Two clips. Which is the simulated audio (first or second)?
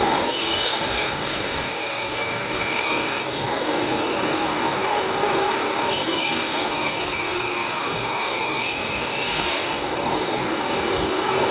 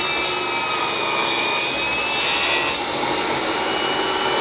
first